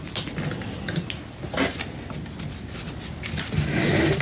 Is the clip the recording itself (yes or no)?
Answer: yes